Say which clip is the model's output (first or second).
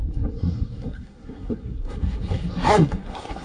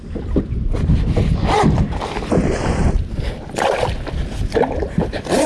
first